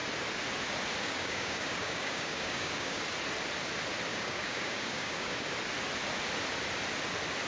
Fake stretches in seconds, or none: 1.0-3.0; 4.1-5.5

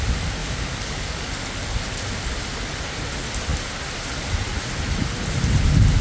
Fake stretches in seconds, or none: 0.4-1.3

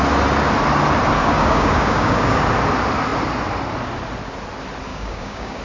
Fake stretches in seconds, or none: 1.2-2.4; 4.9-5.6